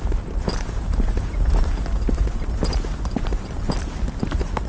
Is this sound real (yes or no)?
yes